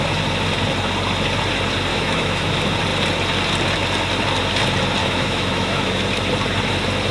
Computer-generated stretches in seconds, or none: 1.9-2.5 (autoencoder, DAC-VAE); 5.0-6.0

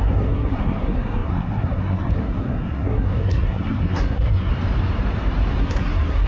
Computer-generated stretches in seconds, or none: 0.0-4.5 (codec, SNAC); 5.6-6.3

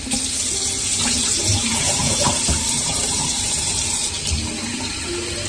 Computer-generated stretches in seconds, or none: 0.9-3.7 (vocoder, BigVGAN v2)

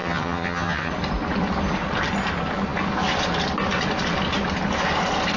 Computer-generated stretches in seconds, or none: 0.0-0.9 (vocoder, HiFi-GAN)